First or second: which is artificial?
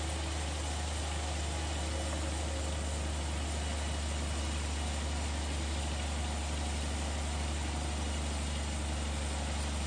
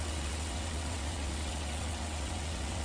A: second